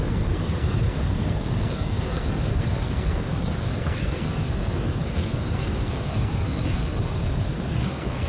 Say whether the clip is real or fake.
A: fake